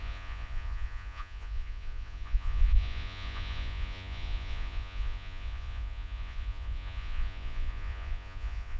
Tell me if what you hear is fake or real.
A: fake